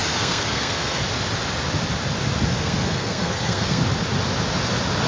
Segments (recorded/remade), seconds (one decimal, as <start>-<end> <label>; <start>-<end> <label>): 0.0-1.0 remade; 1.0-2.5 recorded; 2.5-3.8 remade; 3.8-5.1 recorded